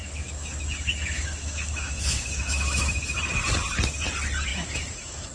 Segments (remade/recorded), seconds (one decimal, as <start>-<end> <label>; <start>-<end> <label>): 0.0-3.2 remade; 3.2-4.5 recorded; 4.5-5.3 remade